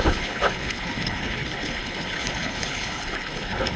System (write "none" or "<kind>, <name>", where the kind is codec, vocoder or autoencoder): codec, HILCodec